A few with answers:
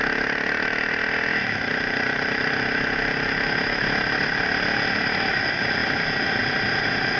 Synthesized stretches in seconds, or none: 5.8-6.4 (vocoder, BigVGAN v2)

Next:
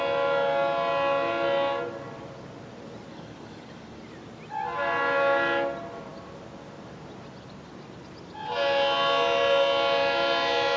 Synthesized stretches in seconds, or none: 3.1-4.0 (codec, DAC)